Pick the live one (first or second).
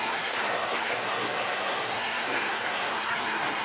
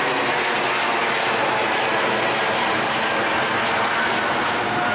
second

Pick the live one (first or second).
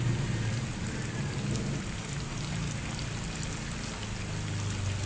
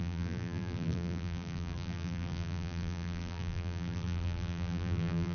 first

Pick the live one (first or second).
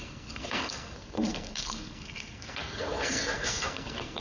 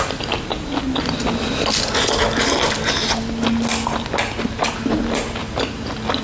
second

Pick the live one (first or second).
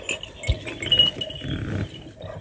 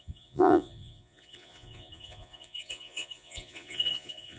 first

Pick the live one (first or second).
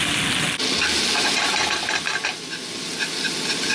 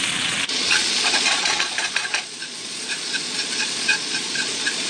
first